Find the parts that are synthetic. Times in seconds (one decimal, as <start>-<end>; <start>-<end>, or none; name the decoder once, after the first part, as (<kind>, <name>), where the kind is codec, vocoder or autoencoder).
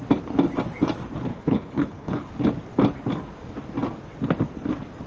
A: 1.3-2.3 (codec, HILCodec)